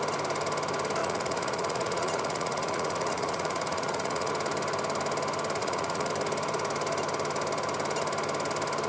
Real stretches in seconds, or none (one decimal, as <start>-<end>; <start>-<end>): 0.0-1.0; 4.3-5.6; 6.1-8.9